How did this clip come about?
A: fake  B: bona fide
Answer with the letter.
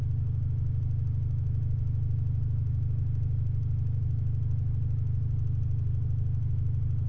B